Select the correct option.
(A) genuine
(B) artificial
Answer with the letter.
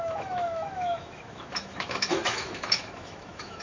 B